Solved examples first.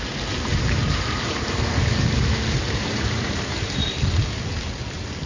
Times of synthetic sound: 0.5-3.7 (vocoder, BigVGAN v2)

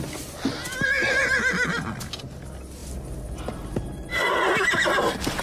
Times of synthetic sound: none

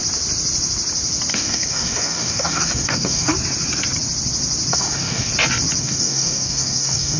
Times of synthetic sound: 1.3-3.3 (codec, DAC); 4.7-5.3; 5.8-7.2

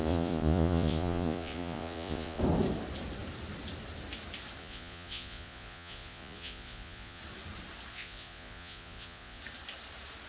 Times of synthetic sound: 0.0-2.4 (vocoder, Vocos); 4.6-7.2; 7.9-9.4

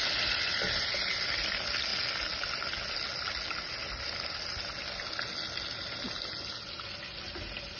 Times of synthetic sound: none

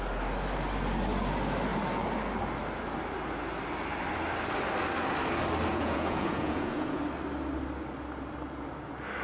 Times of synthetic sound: 5.7-7.0 (vocoder, Vocos)